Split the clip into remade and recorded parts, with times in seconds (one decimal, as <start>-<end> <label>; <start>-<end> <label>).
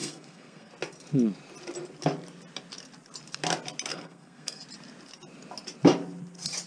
0.0-0.7 remade; 0.7-3.9 recorded; 3.9-4.6 remade; 4.6-6.7 recorded